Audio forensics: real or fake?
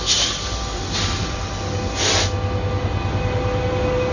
real